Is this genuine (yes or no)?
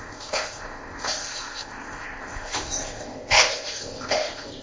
no